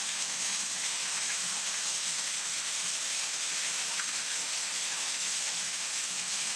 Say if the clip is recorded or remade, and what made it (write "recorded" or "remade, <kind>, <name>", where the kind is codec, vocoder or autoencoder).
remade, autoencoder, DAC-VAE